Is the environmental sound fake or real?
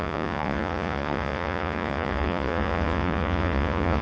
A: fake